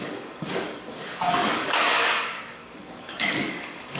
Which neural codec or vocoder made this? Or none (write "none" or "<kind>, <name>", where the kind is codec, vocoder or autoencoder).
codec, DAC